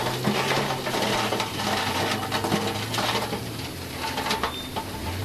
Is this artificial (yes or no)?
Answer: no